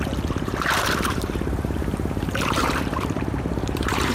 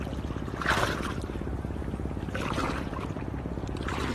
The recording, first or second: second